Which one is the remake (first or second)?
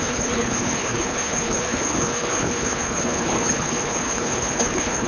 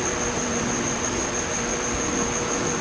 first